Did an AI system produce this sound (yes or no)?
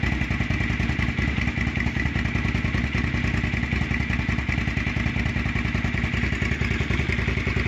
no